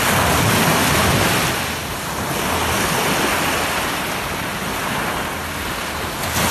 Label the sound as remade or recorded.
recorded